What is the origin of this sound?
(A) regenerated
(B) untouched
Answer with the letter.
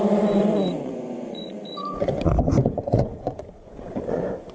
A